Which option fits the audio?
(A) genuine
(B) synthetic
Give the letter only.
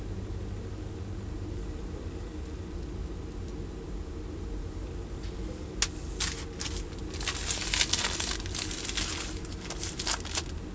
A